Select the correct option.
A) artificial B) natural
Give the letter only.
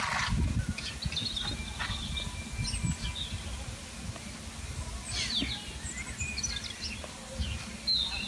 B